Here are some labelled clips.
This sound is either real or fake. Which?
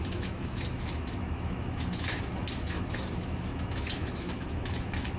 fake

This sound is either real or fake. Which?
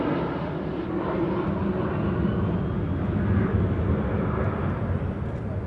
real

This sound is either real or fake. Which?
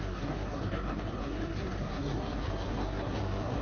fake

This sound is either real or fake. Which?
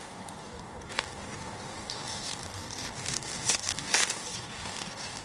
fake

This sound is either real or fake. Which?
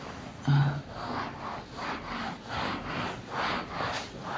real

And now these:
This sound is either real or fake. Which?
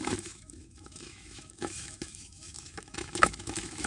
fake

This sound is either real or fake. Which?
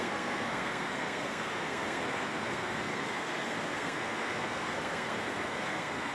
fake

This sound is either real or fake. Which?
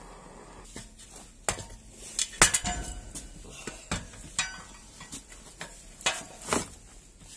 real